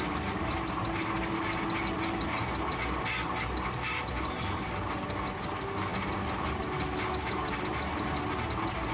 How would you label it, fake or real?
real